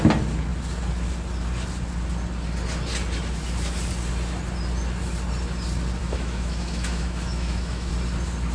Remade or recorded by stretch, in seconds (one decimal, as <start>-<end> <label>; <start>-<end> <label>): 0.0-6.0 recorded; 6.0-7.9 remade; 7.9-8.5 recorded